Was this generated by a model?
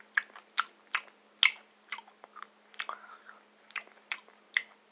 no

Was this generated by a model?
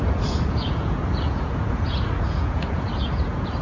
yes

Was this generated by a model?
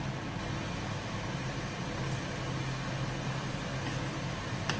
no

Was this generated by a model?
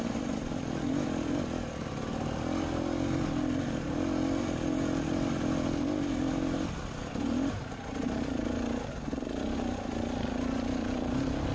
no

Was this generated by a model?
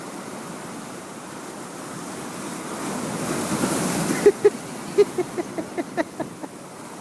no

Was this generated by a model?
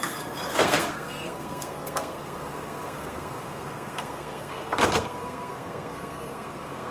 yes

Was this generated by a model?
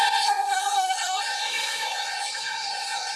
yes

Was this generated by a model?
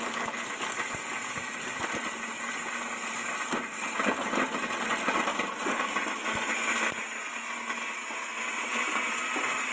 no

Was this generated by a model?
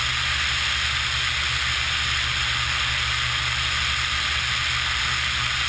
no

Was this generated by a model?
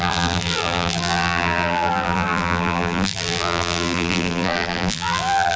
yes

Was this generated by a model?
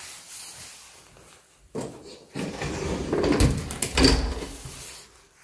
no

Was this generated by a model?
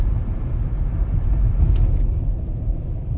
yes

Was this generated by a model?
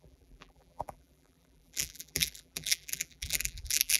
yes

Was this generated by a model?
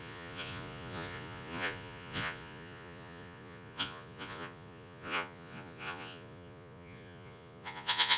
yes